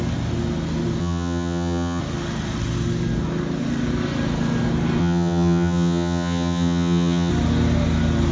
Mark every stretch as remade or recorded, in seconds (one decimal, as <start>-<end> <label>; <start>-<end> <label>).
0.0-1.0 recorded; 1.0-2.0 remade; 2.0-5.0 recorded; 5.0-7.3 remade; 7.3-8.3 recorded